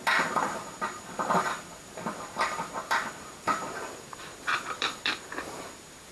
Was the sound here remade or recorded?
remade